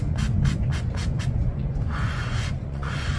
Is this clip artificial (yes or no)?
yes